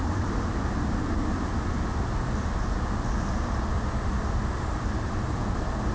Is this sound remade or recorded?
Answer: recorded